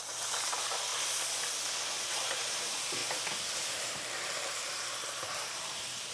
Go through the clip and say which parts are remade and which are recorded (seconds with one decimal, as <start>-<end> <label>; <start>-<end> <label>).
0.0-0.9 remade; 0.9-2.1 recorded; 2.1-3.0 remade; 3.0-3.6 recorded; 3.6-6.1 remade